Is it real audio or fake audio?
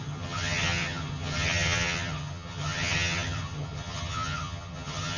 fake